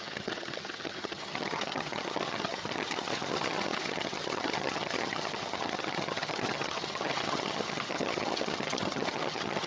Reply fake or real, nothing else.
fake